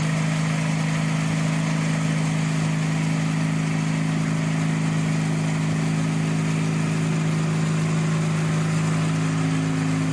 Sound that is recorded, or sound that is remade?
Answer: recorded